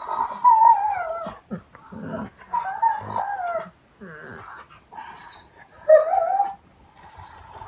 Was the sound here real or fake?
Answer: real